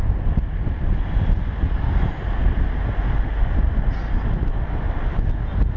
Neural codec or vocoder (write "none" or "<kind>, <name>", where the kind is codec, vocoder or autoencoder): none